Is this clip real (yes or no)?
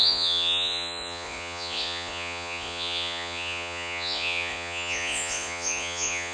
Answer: no